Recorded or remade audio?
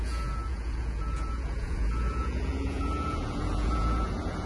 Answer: remade